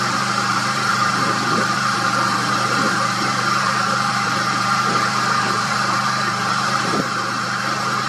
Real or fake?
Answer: fake